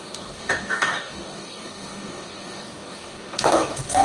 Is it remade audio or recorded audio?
remade